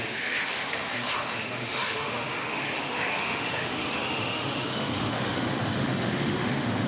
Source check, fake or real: fake